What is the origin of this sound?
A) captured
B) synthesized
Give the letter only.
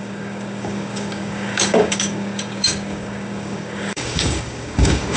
B